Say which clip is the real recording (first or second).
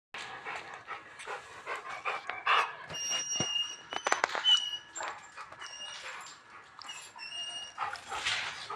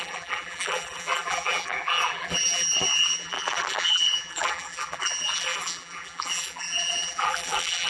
first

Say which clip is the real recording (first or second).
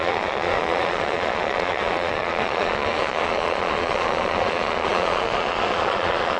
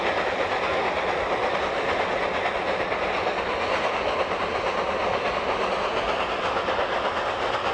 second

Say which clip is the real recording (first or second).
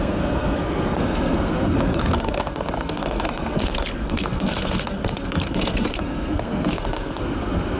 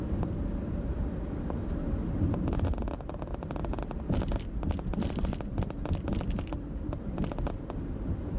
second